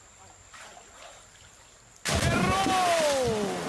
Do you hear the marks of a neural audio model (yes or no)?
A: no